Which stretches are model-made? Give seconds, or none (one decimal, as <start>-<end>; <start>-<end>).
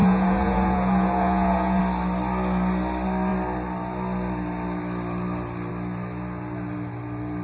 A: 0.0-1.8